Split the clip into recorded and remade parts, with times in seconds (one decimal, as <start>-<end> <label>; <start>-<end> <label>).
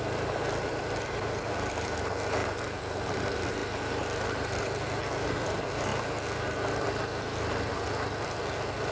0.0-3.6 remade; 3.6-5.1 recorded; 5.1-5.9 remade; 5.9-7.7 recorded; 7.7-8.9 remade